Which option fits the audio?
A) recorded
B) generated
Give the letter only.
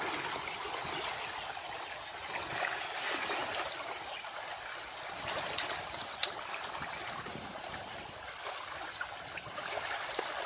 A